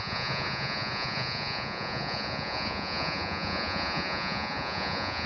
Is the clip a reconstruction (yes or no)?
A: yes